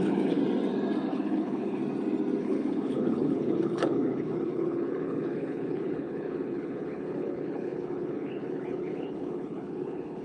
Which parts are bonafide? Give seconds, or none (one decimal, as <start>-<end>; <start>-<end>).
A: 0.4-1.1; 1.8-2.4